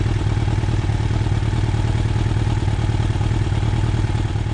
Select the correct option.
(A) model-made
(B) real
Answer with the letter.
B